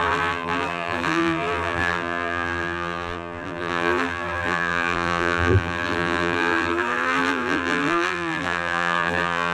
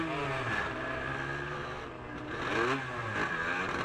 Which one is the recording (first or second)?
second